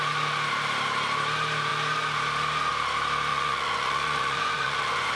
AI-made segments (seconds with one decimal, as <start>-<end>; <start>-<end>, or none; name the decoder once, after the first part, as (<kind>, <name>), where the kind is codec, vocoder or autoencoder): 3.3-5.1 (vocoder, Vocos)